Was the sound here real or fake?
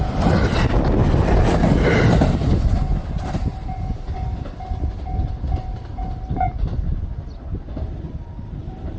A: real